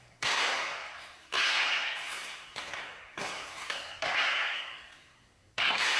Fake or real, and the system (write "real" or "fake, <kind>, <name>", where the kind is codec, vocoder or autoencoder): fake, codec, SNAC